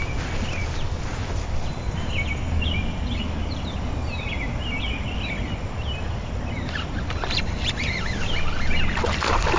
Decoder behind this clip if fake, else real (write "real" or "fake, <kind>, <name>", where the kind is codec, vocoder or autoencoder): real